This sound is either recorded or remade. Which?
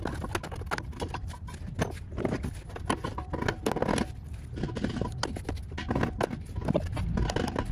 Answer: recorded